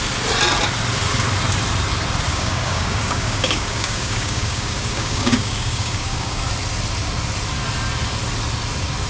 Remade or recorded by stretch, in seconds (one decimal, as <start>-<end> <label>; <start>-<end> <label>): 0.0-2.3 recorded; 2.3-6.5 remade; 6.5-9.1 recorded